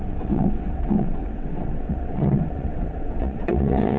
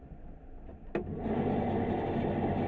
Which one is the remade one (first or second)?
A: first